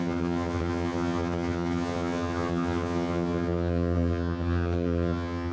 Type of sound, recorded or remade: remade